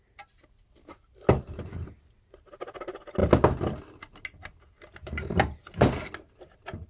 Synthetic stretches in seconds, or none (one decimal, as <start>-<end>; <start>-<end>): none